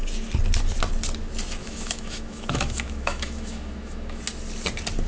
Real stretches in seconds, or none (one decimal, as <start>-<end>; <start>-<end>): 0.0-1.6; 4.2-5.1